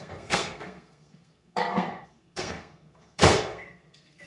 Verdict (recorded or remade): remade